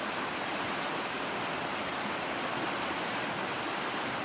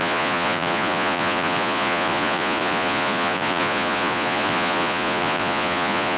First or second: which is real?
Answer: first